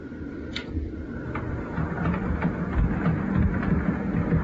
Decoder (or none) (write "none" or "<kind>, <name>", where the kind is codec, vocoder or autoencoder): none